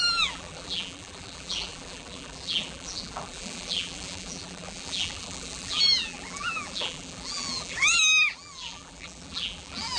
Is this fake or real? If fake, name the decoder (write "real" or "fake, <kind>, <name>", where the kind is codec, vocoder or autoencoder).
fake, vocoder, BigVGAN v2